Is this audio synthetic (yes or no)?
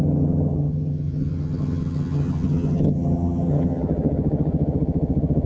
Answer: yes